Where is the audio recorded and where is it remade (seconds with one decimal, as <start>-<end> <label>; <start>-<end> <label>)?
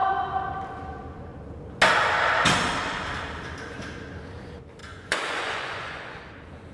0.0-4.8 recorded; 4.8-6.2 remade; 6.2-6.7 recorded